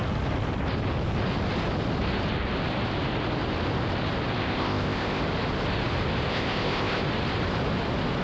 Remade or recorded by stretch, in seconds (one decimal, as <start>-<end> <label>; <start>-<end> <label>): 0.0-4.4 recorded; 4.4-5.2 remade; 5.2-6.3 recorded; 6.3-7.0 remade; 7.0-8.2 recorded